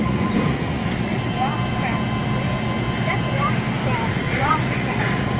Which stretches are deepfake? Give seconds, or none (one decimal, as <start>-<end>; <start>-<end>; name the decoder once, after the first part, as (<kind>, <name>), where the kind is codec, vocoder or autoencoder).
0.0-1.1 (vocoder, Vocos); 4.1-5.4